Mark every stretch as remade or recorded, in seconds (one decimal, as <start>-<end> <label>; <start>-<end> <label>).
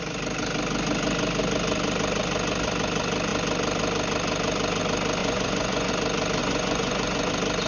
0.0-5.2 recorded; 5.2-5.9 remade; 5.9-6.4 recorded; 6.4-7.3 remade; 7.3-7.7 recorded